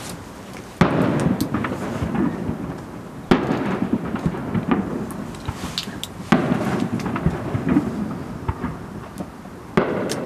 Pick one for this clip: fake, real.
real